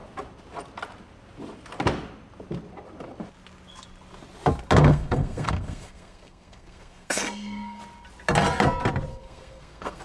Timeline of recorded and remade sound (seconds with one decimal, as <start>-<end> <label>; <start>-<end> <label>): 0.0-4.8 recorded; 4.8-7.8 remade; 7.8-9.1 recorded; 9.1-10.0 remade